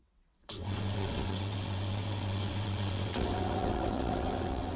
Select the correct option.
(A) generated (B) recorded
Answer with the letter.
A